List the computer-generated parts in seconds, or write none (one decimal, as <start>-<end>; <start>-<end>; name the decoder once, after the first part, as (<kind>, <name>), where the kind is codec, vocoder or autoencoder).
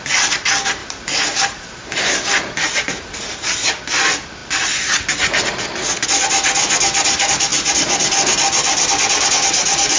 0.8-3.7 (vocoder, BigVGAN v2)